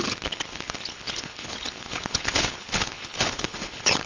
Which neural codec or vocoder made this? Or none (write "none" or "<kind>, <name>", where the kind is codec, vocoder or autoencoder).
codec, HILCodec